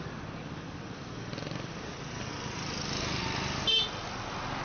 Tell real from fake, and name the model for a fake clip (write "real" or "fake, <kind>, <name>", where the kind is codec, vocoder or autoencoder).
real